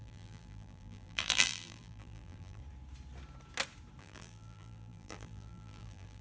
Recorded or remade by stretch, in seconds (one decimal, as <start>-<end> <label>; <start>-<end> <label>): 0.0-2.6 remade; 2.6-4.0 recorded; 4.0-6.2 remade